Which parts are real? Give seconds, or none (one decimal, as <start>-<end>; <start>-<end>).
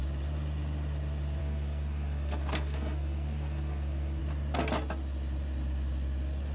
0.0-1.4; 4.2-6.5